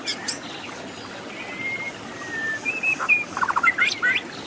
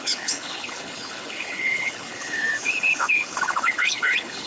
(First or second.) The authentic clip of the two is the first